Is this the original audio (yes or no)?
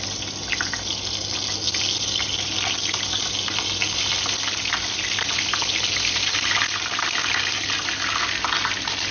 yes